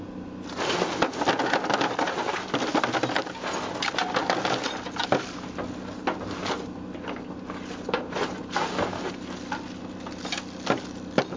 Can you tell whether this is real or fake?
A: real